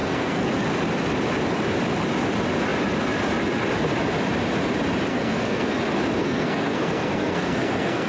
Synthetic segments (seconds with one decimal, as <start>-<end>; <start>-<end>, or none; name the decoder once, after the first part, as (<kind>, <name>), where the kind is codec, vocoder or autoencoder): 0.0-0.5 (codec, SNAC); 5.1-5.8; 6.2-8.1